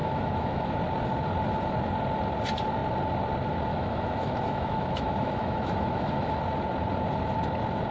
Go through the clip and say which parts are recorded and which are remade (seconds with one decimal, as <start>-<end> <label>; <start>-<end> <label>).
0.0-0.7 remade; 0.7-3.7 recorded; 3.7-6.4 remade; 6.4-7.9 recorded